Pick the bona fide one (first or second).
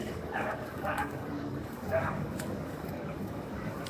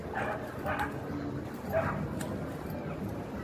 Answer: second